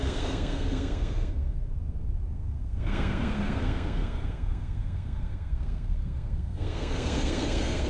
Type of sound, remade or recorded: remade